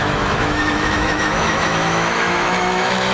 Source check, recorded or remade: remade